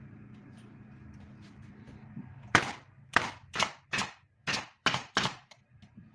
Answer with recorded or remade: remade